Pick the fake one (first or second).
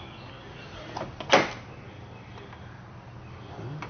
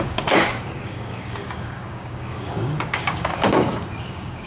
second